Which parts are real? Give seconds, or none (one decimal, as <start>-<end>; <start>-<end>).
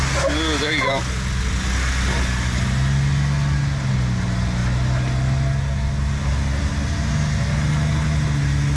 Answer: 0.0-8.8